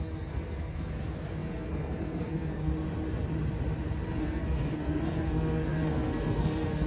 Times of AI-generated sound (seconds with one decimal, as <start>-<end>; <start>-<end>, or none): 0.0-2.7; 4.1-6.9